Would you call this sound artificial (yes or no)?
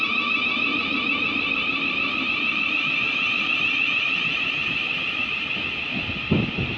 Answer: no